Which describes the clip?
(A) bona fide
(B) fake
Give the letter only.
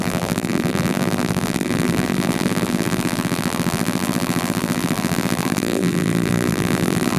B